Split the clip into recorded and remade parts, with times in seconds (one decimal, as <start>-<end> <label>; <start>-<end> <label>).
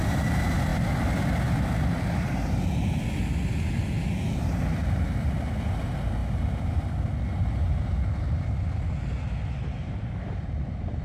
0.0-11.0 recorded